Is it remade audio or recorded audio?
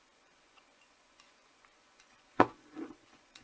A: remade